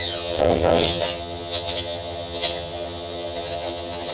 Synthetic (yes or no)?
yes